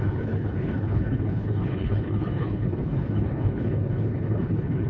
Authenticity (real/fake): fake